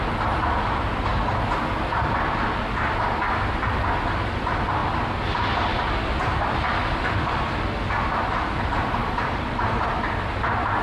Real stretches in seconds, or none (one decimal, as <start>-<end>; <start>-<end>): 0.0-9.0